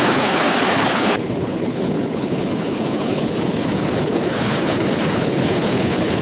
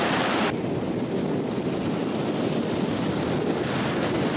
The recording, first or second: second